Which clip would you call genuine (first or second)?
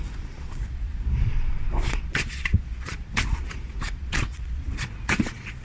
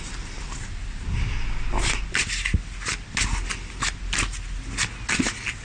second